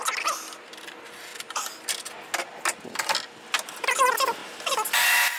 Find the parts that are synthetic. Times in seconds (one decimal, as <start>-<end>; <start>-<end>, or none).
none